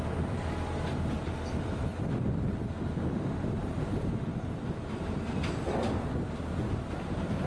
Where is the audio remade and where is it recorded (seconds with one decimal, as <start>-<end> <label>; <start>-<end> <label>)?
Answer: 0.0-1.9 recorded; 1.9-3.5 remade; 3.5-4.3 recorded; 4.3-5.0 remade; 5.0-7.5 recorded